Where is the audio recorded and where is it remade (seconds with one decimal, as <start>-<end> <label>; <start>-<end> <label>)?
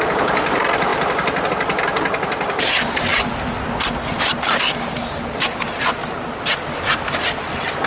0.0-0.9 recorded; 0.9-1.5 remade; 1.5-7.9 recorded